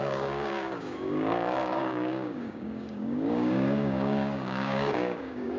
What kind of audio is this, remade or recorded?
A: remade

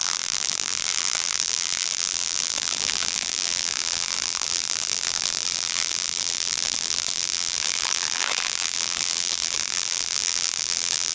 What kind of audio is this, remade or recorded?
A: remade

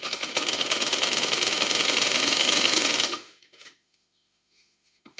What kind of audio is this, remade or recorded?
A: remade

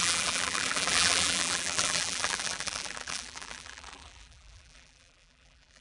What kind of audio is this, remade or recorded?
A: remade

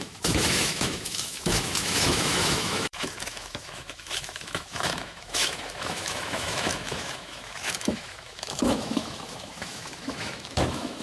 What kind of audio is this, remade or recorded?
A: remade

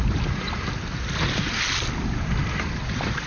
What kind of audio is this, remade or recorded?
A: recorded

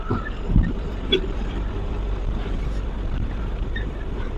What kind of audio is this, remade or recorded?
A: remade